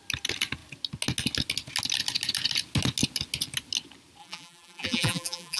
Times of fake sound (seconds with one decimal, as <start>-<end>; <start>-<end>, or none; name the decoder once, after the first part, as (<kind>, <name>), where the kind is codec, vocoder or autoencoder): 4.2-5.6 (vocoder, BigVGAN v2)